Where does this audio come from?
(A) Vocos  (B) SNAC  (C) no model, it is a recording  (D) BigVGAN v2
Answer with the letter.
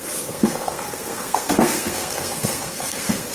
B